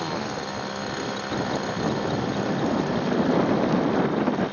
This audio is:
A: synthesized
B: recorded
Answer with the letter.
B